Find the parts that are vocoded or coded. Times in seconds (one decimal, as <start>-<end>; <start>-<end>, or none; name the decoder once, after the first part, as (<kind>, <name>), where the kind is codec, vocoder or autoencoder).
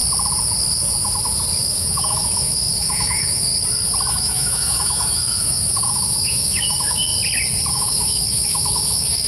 1.6-3.5 (autoencoder, DAC-VAE); 4.1-7.1; 7.7-9.3